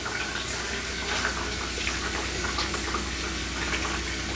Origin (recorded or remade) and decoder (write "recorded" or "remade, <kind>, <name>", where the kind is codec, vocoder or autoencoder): remade, codec, DAC